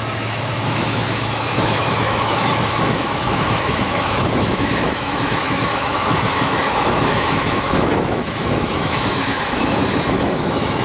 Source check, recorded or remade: remade